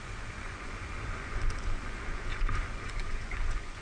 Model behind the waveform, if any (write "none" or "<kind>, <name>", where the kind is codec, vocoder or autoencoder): vocoder, Vocos